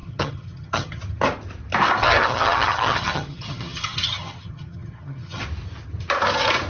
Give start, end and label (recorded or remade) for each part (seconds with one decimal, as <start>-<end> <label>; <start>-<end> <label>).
0.0-1.0 remade; 1.0-2.0 recorded; 2.0-5.4 remade; 5.4-6.7 recorded